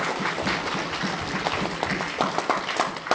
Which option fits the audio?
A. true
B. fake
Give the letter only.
A